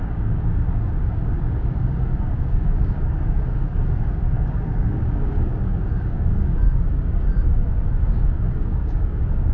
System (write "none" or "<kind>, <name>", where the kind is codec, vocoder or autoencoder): codec, DAC